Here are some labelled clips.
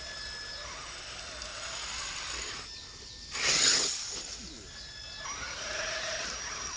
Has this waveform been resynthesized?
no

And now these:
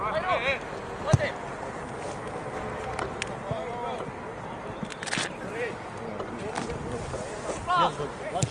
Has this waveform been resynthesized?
no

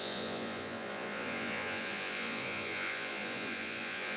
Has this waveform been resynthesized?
yes